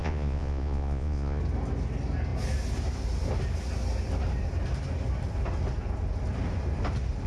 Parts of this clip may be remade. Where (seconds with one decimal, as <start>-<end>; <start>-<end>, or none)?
0.0-1.4